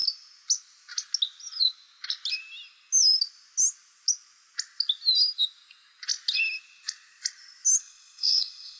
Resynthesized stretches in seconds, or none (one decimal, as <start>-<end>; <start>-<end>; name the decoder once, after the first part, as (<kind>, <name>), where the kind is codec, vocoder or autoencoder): 7.8-8.8 (codec, ZipCodec)

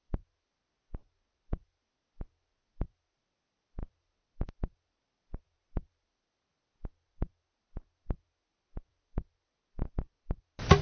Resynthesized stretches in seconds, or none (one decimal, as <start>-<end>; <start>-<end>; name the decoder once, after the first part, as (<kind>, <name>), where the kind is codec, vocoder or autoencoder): none